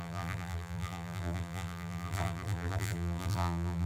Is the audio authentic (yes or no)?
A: no